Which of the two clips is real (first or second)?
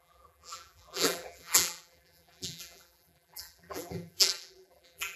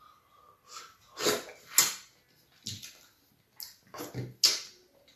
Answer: second